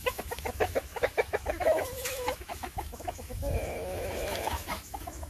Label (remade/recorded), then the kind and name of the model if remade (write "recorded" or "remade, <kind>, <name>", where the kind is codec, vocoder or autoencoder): remade, autoencoder, DAC-VAE